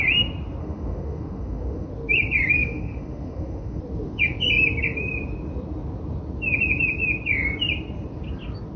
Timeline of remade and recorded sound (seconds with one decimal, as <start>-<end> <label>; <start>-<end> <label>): 0.0-0.6 recorded; 0.6-1.9 remade; 1.9-2.6 recorded; 2.6-3.8 remade; 3.8-8.8 recorded